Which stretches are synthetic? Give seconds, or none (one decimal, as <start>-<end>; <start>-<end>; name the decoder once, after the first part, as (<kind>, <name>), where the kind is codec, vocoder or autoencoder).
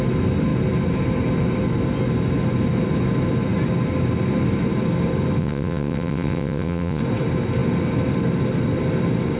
5.4-7.0 (vocoder, WaveNeXt)